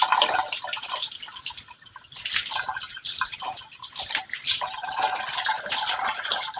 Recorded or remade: recorded